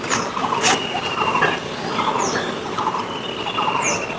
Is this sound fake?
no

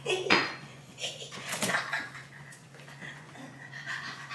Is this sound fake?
yes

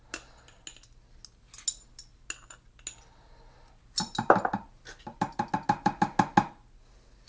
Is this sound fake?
no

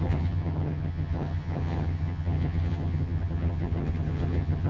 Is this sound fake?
yes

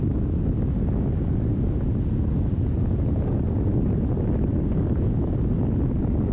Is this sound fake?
no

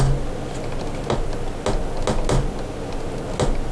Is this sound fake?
no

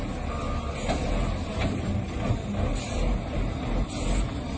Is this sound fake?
no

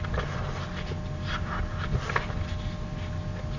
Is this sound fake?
no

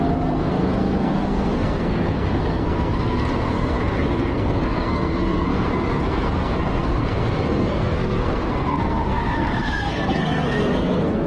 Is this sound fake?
yes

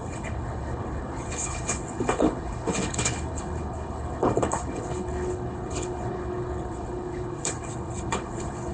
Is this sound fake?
yes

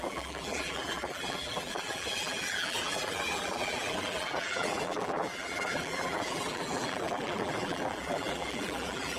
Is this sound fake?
yes